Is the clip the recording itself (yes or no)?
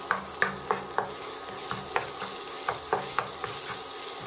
yes